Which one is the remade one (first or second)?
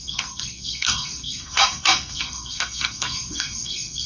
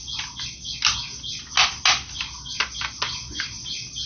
first